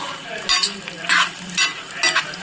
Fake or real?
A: real